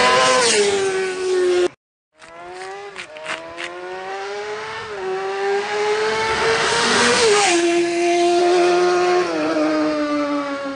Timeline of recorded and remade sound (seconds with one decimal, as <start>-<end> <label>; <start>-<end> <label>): 0.0-4.1 recorded; 4.1-8.4 remade; 8.4-9.7 recorded; 9.7-10.8 remade